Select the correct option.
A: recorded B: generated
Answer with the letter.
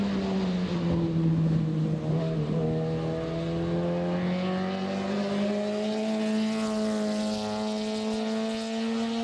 A